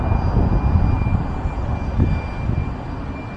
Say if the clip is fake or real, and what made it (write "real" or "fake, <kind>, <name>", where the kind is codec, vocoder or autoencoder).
real